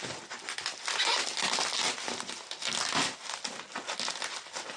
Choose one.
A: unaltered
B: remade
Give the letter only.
A